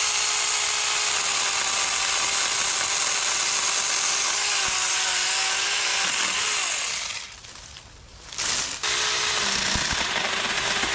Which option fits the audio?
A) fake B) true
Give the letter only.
B